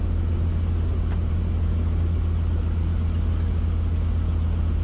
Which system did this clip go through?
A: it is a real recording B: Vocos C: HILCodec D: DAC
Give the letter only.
A